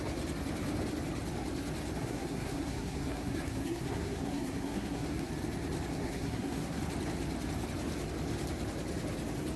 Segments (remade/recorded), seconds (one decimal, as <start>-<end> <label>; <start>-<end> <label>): 0.0-2.0 recorded; 2.0-5.3 remade; 5.3-5.9 recorded; 5.9-6.8 remade; 6.8-9.6 recorded